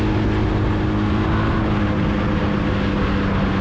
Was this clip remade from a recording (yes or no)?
no